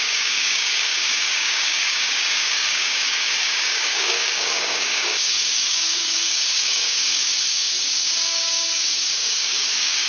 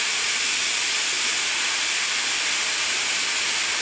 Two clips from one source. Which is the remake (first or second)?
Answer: first